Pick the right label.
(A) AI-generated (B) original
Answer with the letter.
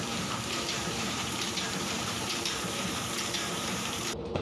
A